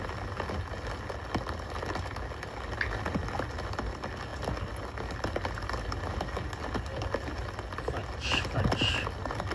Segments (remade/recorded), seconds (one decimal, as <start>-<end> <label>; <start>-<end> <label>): 0.0-9.5 recorded